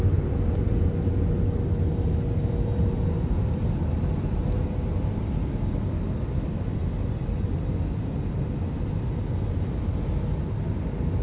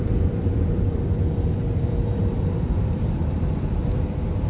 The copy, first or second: second